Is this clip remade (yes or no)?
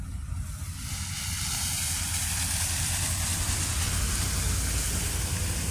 no